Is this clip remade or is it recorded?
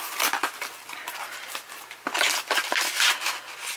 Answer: recorded